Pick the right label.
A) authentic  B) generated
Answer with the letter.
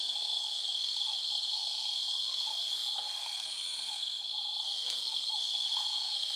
B